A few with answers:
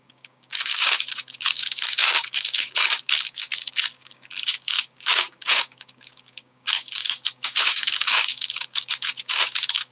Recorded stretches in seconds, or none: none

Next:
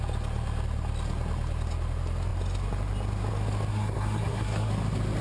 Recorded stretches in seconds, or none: 0.0-3.7; 4.7-5.2

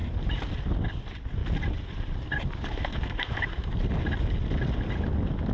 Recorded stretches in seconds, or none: 0.0-2.9; 3.7-5.5

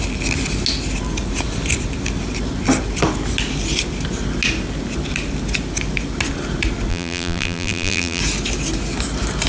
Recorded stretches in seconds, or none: 0.0-6.9; 8.2-9.5

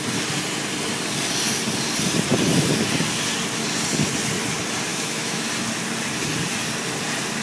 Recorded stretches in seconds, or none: 0.0-4.9; 5.5-7.4